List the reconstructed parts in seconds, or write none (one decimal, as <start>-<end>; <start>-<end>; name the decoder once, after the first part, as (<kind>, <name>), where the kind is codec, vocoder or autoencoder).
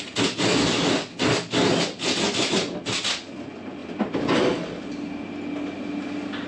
none